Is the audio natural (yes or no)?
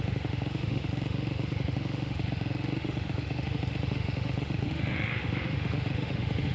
no